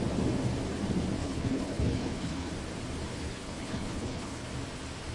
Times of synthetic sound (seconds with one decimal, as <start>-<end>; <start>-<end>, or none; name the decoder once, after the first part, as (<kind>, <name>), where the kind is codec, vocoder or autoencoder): 1.2-2.5 (codec, HILCodec); 3.1-4.5